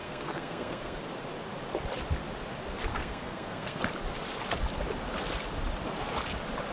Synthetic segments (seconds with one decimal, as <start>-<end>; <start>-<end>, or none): 0.0-1.0; 2.9-3.8